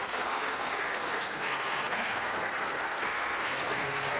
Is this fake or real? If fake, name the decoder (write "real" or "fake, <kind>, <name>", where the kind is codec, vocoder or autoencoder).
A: fake, codec, SNAC